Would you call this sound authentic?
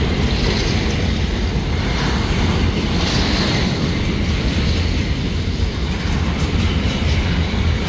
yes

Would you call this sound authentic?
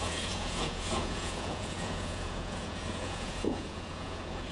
no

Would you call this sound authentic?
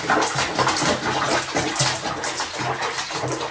yes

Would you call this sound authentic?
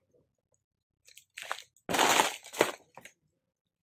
yes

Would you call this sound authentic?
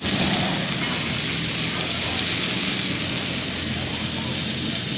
yes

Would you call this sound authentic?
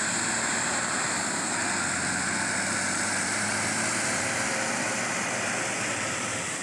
no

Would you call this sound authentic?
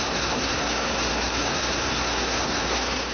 no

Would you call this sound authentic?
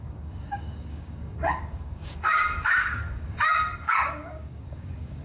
no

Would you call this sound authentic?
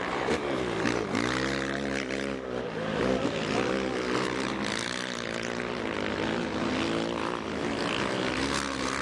yes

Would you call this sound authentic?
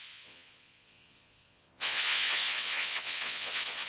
no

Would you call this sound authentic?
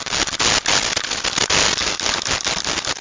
yes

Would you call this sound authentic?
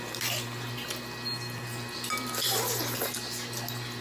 yes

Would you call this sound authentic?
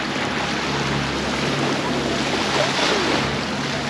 yes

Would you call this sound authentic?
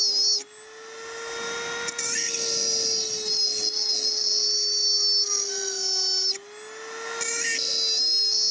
yes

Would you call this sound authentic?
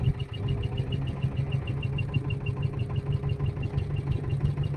yes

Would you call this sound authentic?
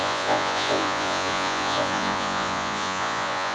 no